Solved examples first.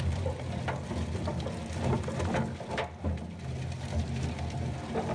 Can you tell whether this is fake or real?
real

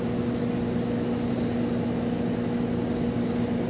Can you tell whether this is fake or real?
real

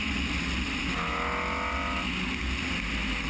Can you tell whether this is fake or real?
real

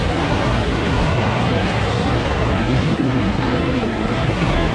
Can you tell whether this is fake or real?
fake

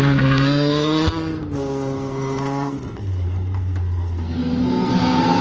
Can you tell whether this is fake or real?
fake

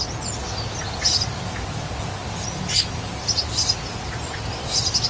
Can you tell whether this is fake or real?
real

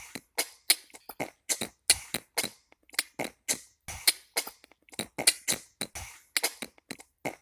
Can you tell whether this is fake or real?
real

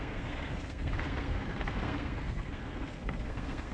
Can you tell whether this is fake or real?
fake